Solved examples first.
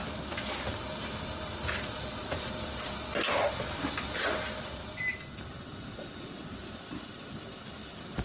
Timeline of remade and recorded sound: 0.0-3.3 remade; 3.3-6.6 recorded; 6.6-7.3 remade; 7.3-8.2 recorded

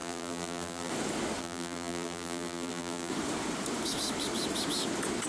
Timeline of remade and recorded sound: 0.0-0.9 remade; 0.9-1.4 recorded; 1.4-3.1 remade; 3.1-5.3 recorded

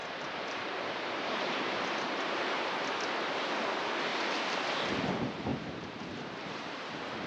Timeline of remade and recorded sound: 0.0-2.4 remade; 2.4-4.1 recorded; 4.1-4.6 remade; 4.6-5.5 recorded; 5.5-7.3 remade

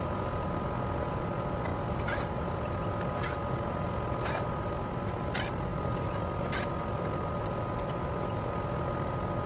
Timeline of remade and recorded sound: 0.0-9.5 recorded